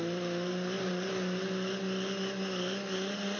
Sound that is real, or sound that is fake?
real